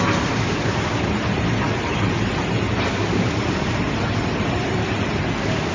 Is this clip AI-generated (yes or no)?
no